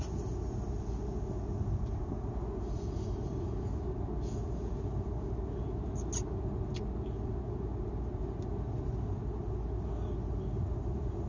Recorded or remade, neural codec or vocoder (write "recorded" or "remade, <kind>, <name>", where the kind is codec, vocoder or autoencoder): recorded